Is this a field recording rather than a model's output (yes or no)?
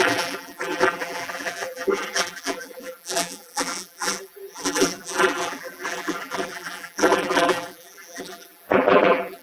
no